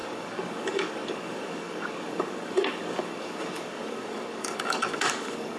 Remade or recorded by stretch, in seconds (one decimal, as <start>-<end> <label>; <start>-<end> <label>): 0.0-5.6 remade